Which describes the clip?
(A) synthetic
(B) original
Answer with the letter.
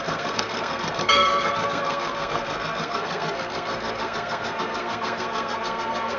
A